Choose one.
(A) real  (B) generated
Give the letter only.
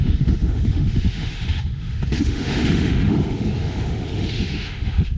B